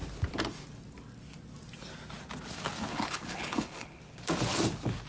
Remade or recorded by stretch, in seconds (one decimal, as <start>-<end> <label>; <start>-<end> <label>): 0.0-2.9 recorded; 2.9-4.0 remade; 4.0-5.1 recorded